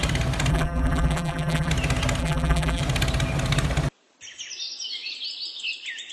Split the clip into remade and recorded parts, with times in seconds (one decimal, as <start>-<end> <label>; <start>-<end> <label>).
0.0-0.5 recorded; 0.5-1.7 remade; 1.7-2.2 recorded; 2.2-2.8 remade; 2.8-6.1 recorded